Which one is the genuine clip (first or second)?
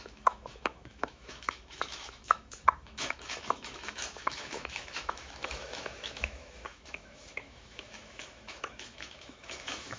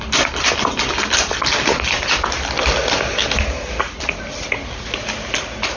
second